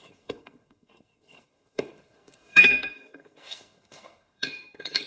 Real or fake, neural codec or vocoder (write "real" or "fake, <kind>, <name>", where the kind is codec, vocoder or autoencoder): fake, codec, SNAC